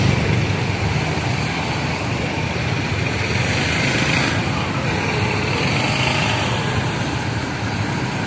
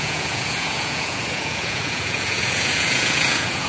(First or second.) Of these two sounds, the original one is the first